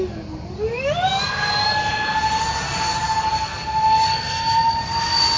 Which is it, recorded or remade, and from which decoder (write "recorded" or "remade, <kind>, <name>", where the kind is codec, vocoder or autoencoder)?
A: recorded